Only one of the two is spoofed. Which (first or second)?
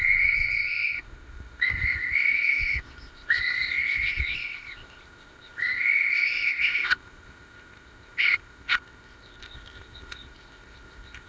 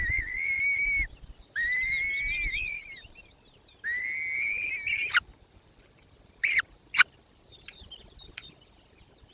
first